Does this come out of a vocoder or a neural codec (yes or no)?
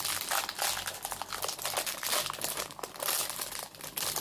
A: no